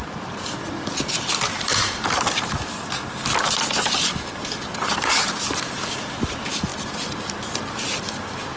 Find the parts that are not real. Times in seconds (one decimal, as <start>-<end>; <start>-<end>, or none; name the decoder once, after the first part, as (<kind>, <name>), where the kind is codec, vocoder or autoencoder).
none